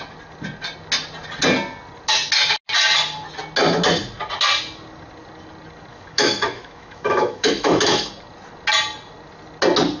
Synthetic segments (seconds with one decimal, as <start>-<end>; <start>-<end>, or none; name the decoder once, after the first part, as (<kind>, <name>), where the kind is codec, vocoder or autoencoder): 5.9-8.1 (autoencoder, DAC-VAE)